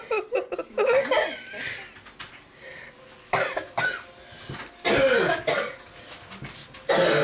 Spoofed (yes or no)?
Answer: no